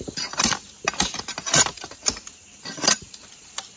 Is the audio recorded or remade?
recorded